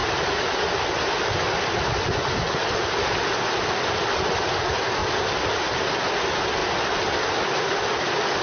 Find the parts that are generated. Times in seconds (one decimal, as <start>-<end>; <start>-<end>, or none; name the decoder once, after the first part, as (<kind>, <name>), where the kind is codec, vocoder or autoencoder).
none